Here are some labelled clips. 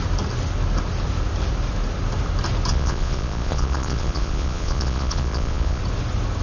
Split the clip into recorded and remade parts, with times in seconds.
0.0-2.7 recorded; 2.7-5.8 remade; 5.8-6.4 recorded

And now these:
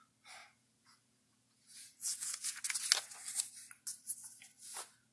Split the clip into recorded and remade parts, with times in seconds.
0.0-0.4 recorded; 0.4-2.6 remade; 2.6-5.1 recorded

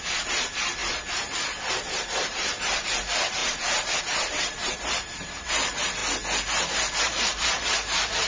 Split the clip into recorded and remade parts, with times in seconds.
0.0-6.0 remade; 6.0-7.0 recorded; 7.0-8.3 remade

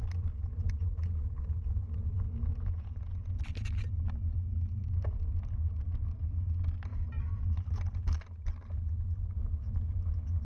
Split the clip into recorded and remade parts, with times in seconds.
0.0-2.5 recorded; 2.5-3.4 remade; 3.4-10.4 recorded